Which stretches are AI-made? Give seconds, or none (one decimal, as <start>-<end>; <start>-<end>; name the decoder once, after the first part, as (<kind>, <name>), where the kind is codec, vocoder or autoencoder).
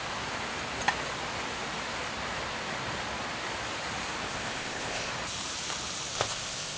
4.3-5.1 (codec, ZipCodec); 6.1-6.8